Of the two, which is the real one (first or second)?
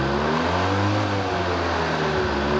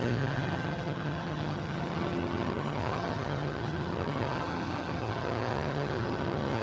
first